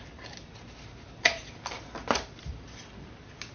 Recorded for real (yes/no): yes